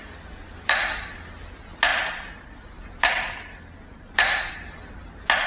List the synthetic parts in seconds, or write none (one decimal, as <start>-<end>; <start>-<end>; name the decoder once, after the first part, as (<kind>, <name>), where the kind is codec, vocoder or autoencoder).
none